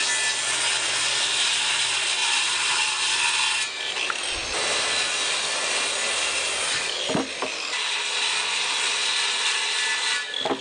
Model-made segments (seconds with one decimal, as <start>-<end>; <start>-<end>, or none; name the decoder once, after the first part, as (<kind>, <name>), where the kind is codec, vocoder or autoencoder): 2.2-2.8 (vocoder, BigVGAN v2); 4.4-6.7